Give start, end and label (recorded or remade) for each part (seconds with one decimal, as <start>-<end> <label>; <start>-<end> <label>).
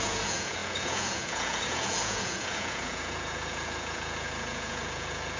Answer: 0.0-5.4 remade